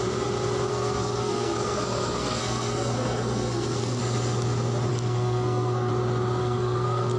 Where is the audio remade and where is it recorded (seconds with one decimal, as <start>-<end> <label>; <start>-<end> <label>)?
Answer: 0.0-0.7 recorded; 0.7-4.0 remade; 4.0-4.9 recorded; 4.9-5.9 remade; 5.9-6.4 recorded; 6.4-7.2 remade